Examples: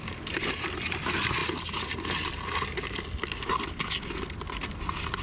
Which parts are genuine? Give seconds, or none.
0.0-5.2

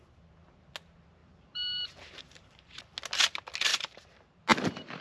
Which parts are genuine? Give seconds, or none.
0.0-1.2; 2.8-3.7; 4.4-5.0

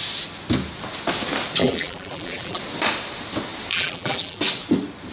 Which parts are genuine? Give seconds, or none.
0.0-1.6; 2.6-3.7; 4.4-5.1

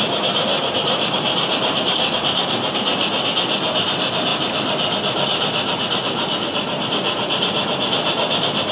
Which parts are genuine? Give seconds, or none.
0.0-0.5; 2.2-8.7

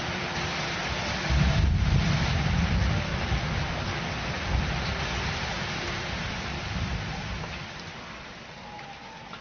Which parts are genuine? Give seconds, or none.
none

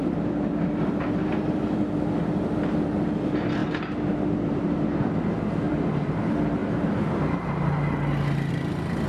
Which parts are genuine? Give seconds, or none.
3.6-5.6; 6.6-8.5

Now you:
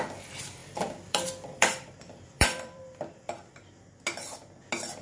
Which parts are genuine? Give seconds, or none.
0.0-0.6; 3.5-5.0

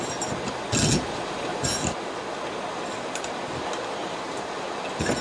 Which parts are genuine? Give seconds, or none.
0.0-4.0; 4.7-5.2